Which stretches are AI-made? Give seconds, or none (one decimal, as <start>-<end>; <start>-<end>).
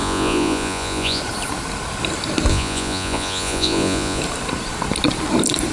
0.0-1.2; 2.5-4.2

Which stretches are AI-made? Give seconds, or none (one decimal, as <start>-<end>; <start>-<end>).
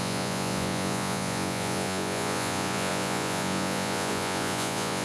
0.0-5.0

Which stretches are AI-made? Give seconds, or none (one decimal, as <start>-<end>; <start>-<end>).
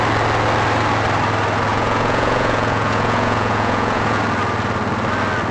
1.7-4.2